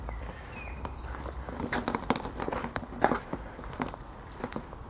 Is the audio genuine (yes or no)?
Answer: no